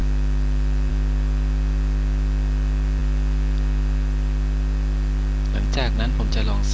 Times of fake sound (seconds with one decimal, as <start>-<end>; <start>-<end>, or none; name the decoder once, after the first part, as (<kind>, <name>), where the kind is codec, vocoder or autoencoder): 0.0-0.9 (vocoder, BigVGAN v2)